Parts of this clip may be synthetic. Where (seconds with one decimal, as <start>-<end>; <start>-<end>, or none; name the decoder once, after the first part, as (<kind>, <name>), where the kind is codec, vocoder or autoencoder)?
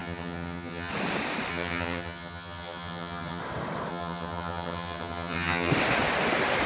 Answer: 0.0-0.9 (vocoder, HiFi-GAN); 1.5-3.4; 3.9-5.7